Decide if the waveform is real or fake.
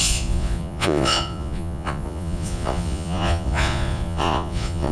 fake